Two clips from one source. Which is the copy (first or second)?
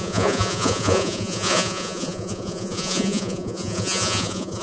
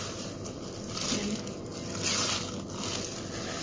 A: first